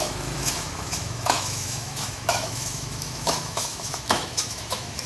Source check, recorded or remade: remade